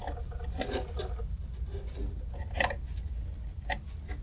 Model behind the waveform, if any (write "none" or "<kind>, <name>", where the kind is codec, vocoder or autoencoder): none